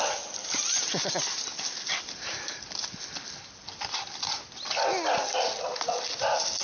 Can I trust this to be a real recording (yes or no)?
yes